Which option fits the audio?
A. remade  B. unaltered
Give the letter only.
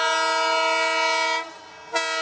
B